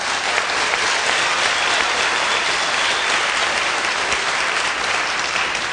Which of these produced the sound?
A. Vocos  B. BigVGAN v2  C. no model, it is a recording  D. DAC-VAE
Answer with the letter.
B